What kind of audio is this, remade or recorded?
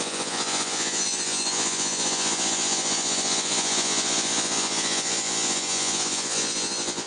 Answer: remade